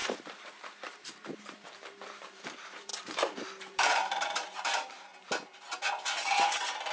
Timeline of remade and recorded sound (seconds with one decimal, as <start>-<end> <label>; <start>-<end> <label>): 0.0-5.1 remade; 5.1-6.9 recorded